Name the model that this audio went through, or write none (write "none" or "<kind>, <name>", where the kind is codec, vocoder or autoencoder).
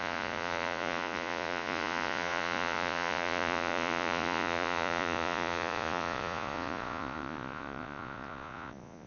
vocoder, Vocos